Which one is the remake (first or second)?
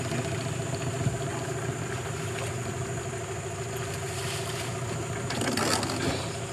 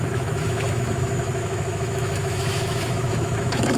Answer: second